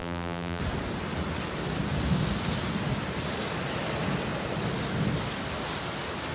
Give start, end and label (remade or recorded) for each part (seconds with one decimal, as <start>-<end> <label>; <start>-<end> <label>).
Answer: 0.0-0.6 remade; 0.6-6.3 recorded